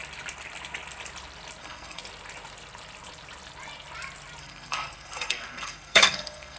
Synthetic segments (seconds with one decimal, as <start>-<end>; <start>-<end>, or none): 1.6-2.0; 4.4-6.6